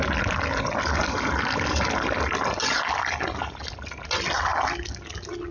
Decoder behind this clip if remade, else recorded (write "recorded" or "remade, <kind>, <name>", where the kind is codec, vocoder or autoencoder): recorded